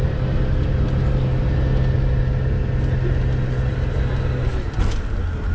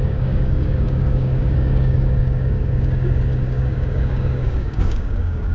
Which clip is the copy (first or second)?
second